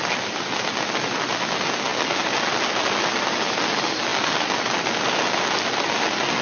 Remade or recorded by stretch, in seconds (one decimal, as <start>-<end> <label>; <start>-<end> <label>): 0.0-6.4 recorded